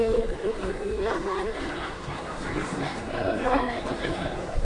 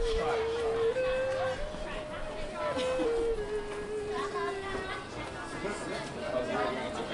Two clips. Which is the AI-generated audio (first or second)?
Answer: first